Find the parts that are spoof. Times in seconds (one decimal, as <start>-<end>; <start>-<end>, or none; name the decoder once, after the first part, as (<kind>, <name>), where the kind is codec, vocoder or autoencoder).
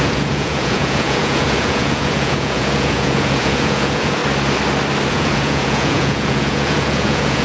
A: 0.0-4.2 (vocoder, Vocos); 5.1-7.4